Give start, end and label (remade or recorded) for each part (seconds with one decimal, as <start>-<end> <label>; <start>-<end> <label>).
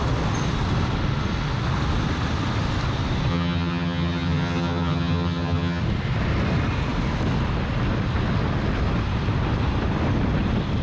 0.0-3.3 recorded; 3.3-5.8 remade; 5.8-10.8 recorded